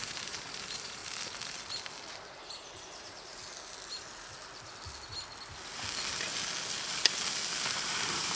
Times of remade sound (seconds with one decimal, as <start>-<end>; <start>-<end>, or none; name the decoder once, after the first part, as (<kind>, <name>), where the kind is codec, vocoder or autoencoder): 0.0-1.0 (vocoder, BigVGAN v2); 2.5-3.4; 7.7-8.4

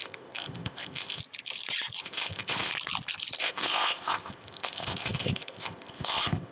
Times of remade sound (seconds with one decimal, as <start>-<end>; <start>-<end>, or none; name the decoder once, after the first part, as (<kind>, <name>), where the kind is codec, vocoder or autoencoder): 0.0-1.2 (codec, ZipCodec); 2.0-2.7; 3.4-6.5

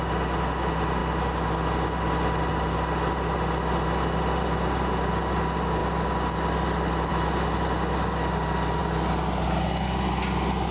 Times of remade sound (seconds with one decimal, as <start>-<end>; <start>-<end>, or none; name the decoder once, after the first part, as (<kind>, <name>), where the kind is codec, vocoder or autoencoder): none

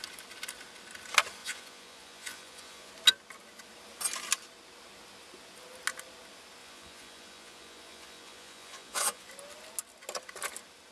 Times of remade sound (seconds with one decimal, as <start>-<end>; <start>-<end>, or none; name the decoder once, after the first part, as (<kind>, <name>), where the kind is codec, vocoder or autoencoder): 1.4-2.9 (vocoder, Vocos); 6.6-9.3

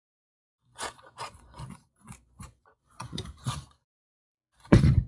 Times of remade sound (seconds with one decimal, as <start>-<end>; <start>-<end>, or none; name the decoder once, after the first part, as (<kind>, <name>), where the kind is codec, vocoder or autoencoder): 0.0-5.1 (vocoder, Vocos)